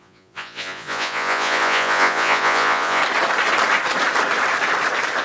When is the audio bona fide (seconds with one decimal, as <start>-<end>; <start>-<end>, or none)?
3.0-5.2

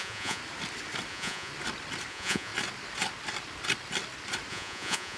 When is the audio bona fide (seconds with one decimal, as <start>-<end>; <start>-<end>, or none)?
0.4-1.1; 1.5-2.1; 2.5-4.5

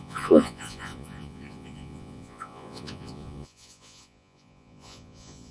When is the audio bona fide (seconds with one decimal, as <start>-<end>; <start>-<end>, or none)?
none

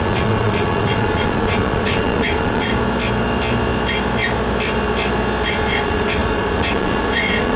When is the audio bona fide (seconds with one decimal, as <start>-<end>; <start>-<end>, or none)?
2.7-5.5